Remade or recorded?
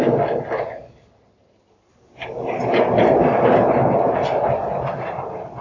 recorded